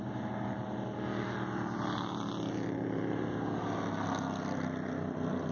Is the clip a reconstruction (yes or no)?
no